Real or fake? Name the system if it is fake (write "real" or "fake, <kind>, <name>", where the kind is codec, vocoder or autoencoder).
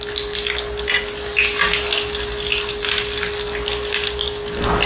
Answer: real